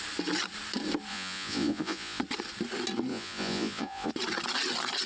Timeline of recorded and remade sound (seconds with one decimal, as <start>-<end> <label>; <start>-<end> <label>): 0.0-1.1 recorded; 1.1-2.2 remade; 2.2-3.1 recorded; 3.1-4.1 remade; 4.1-5.1 recorded

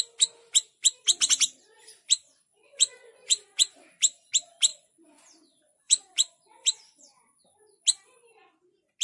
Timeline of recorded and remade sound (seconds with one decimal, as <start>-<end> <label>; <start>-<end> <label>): 0.0-2.5 recorded; 2.5-3.8 remade; 3.8-4.7 recorded; 4.7-7.3 remade; 7.3-9.0 recorded

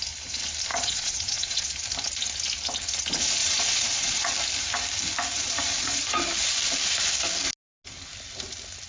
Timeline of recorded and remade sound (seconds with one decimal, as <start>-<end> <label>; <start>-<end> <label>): 0.0-0.7 recorded; 0.7-1.7 remade; 1.7-3.4 recorded; 3.4-4.3 remade; 4.3-5.3 recorded; 5.3-6.2 remade; 6.2-8.9 recorded

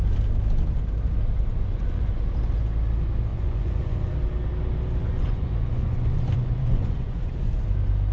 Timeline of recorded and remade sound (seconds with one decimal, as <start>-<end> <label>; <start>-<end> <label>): 0.0-1.5 recorded; 1.5-2.1 remade; 2.1-3.3 recorded; 3.3-4.1 remade; 4.1-5.0 recorded; 5.0-7.3 remade; 7.3-8.1 recorded

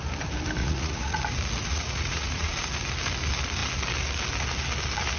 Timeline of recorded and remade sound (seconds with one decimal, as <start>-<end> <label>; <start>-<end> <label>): 0.0-0.6 recorded; 0.6-1.2 remade; 1.2-1.6 recorded; 1.6-2.5 remade; 2.5-5.2 recorded

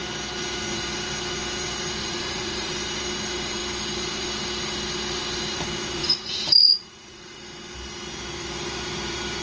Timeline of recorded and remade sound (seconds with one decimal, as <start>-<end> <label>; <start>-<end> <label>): 0.0-2.0 recorded; 2.0-2.7 remade; 2.7-6.0 recorded; 6.0-7.4 remade; 7.4-9.4 recorded

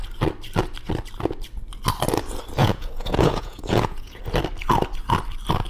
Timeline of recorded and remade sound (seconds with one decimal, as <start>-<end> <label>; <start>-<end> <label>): 0.0-2.6 recorded; 2.6-4.2 remade; 4.2-5.7 recorded